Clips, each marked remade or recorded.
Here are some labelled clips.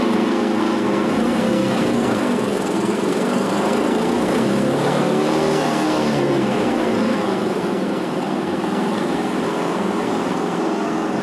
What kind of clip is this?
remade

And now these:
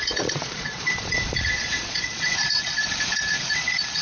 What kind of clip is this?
remade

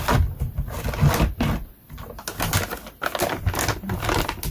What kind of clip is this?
recorded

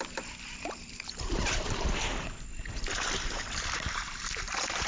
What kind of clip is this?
remade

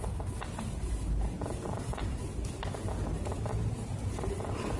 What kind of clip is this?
recorded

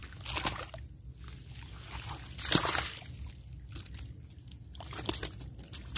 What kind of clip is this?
recorded